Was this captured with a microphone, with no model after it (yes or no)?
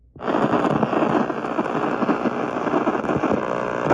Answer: yes